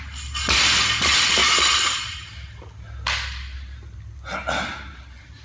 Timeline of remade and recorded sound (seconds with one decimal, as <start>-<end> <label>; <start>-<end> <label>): 0.0-5.4 recorded